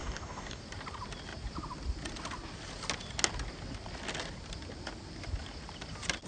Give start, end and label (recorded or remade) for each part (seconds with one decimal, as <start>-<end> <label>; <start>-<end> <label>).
0.0-0.6 remade; 0.6-6.3 recorded